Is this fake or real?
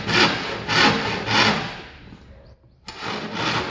real